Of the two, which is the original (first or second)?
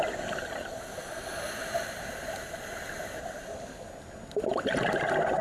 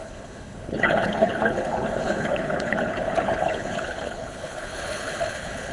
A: first